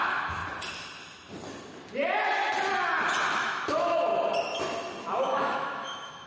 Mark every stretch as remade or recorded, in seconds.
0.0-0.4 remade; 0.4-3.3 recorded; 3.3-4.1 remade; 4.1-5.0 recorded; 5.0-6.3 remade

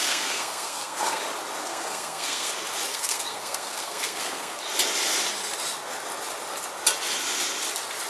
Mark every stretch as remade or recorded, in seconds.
0.0-1.2 remade; 1.2-1.7 recorded; 1.7-2.5 remade; 2.5-2.9 recorded; 2.9-4.6 remade; 4.6-8.1 recorded

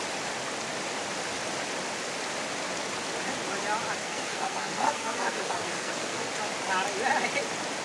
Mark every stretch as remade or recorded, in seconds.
0.0-4.0 recorded; 4.0-6.3 remade; 6.3-7.8 recorded

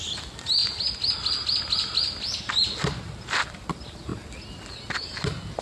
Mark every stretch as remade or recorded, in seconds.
0.0-5.6 recorded